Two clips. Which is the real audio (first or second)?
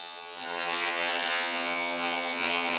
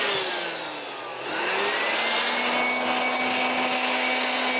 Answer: second